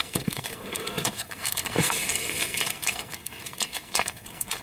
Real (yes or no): no